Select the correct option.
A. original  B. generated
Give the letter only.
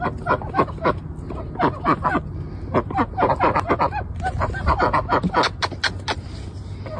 A